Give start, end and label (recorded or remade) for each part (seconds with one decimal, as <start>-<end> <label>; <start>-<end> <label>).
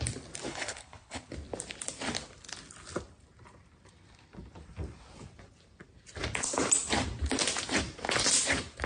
0.0-0.5 recorded; 0.5-1.3 remade; 1.3-8.9 recorded